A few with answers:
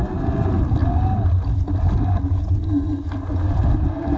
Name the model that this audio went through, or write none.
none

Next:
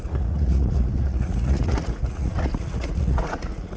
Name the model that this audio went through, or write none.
vocoder, Vocos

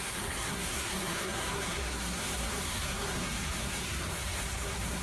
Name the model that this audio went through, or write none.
codec, SNAC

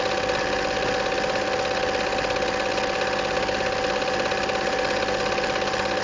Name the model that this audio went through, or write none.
none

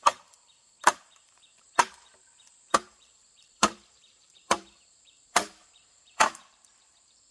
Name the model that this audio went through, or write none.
vocoder, BigVGAN v2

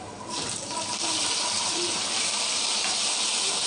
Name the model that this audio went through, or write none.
vocoder, BigVGAN v2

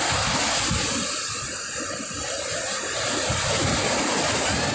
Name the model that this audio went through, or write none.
none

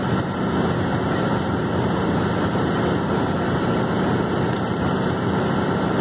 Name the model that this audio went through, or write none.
none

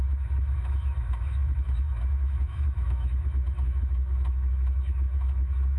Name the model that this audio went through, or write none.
autoencoder, DAC-VAE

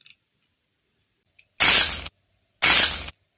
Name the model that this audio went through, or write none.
none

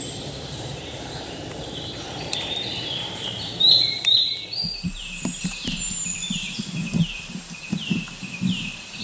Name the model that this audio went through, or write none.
vocoder, BigVGAN v2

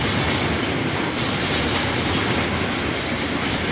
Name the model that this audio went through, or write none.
none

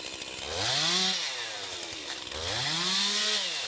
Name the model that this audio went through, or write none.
none